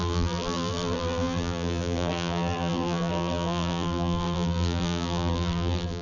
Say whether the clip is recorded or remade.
remade